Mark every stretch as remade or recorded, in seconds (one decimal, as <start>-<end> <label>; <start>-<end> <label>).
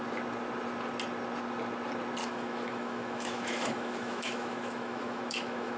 0.0-2.2 recorded; 2.2-5.8 remade